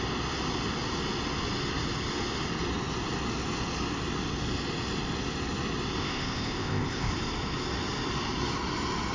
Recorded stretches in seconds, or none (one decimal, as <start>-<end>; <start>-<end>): 0.0-6.0; 7.1-9.1